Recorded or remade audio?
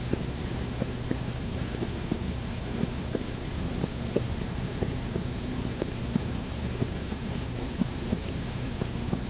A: remade